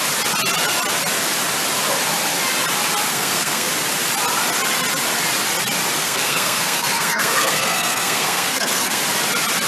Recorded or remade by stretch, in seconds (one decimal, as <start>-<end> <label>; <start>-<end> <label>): 0.0-3.1 recorded; 3.1-3.7 remade; 3.7-6.0 recorded; 6.0-9.0 remade; 9.0-9.7 recorded